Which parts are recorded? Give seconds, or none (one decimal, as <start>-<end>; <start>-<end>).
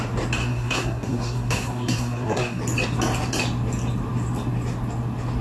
0.0-0.4; 2.6-5.4